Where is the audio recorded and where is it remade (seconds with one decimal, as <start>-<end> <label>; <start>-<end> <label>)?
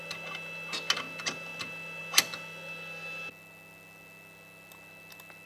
0.0-5.5 recorded